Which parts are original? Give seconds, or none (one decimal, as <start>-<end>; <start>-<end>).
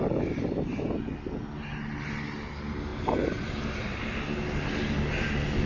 0.0-5.7